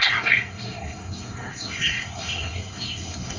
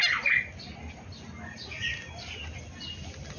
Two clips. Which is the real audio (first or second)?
second